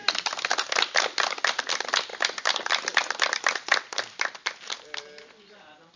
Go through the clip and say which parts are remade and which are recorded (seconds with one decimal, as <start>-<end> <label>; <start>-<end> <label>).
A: 0.0-0.5 remade; 0.5-2.1 recorded; 2.1-6.0 remade